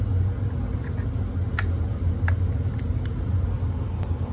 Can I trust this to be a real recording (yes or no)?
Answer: yes